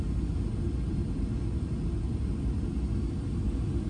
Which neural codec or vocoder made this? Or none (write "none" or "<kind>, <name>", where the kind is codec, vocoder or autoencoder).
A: none